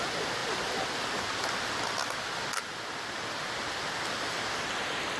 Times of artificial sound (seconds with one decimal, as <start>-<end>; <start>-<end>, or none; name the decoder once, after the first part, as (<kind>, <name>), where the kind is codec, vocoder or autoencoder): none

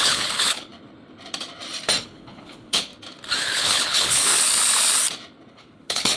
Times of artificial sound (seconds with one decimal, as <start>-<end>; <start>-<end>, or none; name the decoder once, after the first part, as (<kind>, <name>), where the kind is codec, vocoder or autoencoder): 0.0-0.7 (codec, HILCodec); 2.0-2.9; 3.4-4.3; 5.5-6.2

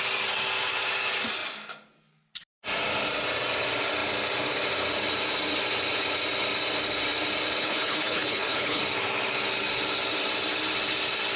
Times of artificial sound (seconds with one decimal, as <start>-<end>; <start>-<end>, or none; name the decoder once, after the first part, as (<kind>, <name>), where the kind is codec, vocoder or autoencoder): 7.6-8.8 (codec, HILCodec)

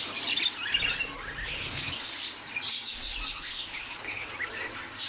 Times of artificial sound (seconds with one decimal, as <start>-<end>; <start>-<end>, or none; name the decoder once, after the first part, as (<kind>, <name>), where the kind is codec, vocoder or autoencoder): 1.4-2.1 (codec, HILCodec); 3.3-4.3

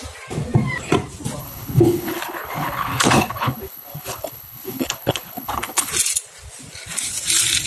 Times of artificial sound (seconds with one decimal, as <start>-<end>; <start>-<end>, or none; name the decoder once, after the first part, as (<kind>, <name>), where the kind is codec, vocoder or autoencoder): 1.4-5.9 (codec, HILCodec)